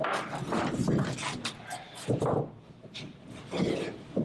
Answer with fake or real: real